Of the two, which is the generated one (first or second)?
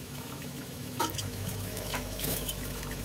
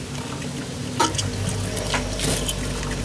first